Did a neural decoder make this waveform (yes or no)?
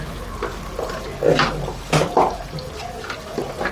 no